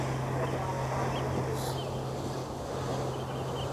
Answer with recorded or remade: recorded